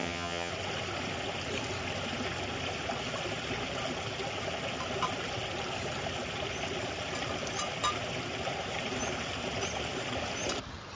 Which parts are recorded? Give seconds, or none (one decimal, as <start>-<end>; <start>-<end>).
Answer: 0.5-10.9